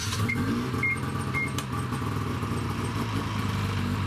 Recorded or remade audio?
recorded